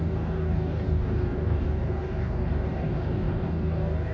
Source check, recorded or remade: remade